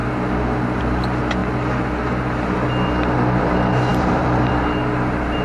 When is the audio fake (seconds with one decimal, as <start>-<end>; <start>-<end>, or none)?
3.9-4.5